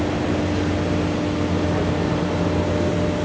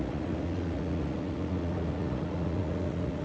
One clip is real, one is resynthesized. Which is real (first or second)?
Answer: first